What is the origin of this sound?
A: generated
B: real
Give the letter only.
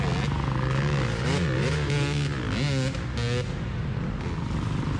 B